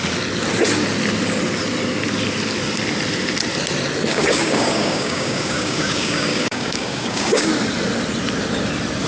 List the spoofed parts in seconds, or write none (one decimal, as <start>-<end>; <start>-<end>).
4.1-7.5